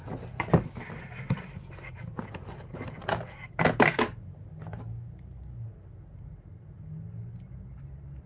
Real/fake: real